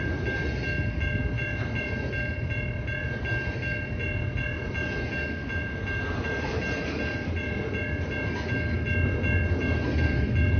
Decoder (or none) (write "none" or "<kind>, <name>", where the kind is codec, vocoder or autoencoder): none